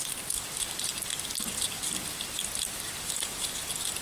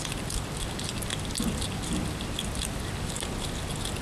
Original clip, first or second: second